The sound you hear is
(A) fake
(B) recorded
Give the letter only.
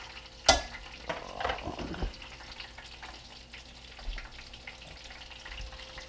B